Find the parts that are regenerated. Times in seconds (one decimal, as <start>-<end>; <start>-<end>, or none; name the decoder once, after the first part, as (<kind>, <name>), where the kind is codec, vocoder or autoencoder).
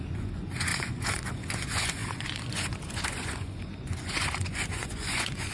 0.0-5.5 (vocoder, Vocos)